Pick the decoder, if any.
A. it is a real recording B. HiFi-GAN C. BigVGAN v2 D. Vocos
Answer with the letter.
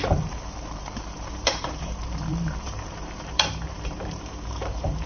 C